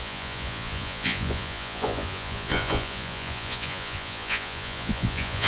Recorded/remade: remade